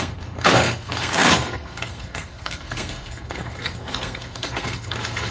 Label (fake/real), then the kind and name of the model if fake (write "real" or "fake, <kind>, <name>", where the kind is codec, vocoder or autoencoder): fake, codec, SNAC